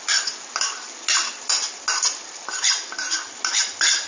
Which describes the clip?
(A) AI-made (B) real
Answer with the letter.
B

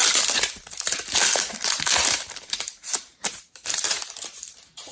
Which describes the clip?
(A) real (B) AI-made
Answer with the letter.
B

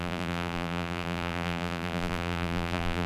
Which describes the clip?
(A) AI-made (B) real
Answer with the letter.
A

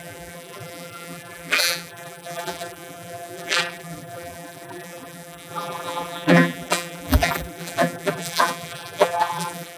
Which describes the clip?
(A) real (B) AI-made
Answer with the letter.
B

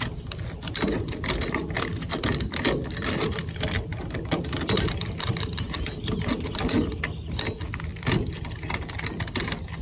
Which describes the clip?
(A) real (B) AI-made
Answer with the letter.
A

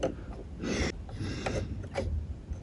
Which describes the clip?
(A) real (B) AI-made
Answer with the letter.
B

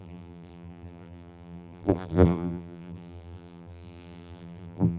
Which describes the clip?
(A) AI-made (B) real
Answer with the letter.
A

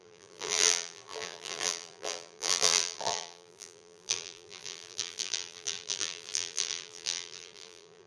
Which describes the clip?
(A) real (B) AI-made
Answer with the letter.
B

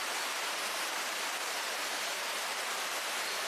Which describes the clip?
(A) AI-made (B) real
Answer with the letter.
A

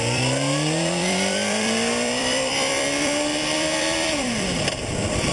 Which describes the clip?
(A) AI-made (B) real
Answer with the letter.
A